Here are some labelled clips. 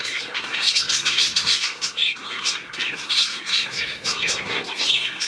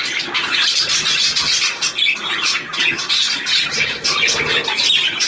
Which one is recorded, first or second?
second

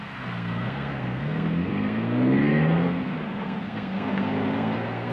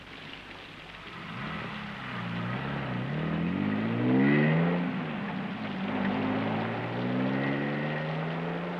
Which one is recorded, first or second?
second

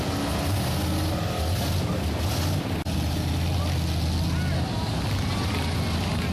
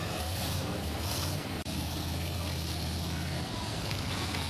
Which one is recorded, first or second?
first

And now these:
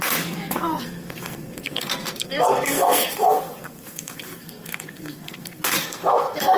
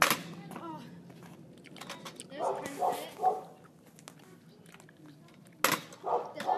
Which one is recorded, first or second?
second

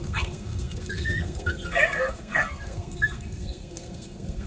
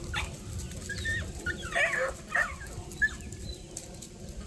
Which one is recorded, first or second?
second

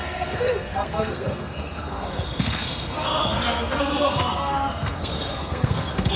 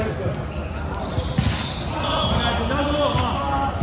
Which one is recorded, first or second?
second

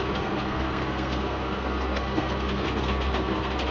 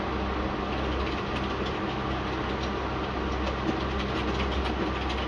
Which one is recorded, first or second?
second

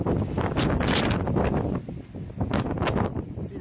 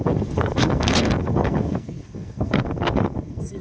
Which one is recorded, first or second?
first